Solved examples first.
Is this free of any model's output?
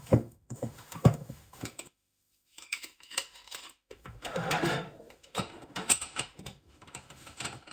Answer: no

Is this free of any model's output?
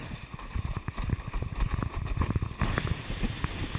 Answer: yes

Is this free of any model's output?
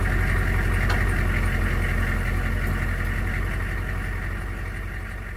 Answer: yes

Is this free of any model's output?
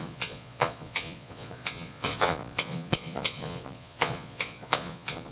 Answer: no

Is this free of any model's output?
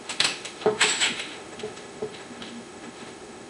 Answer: no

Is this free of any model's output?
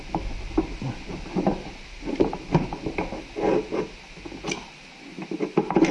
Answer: yes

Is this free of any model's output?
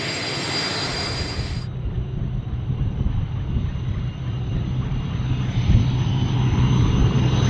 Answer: yes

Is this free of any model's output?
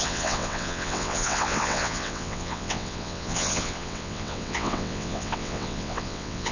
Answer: no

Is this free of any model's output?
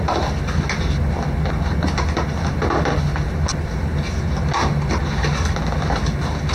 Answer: yes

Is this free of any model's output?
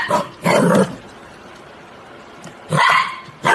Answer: no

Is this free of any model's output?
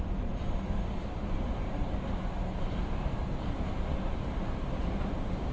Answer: yes